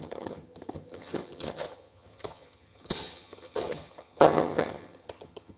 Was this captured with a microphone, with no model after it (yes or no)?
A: no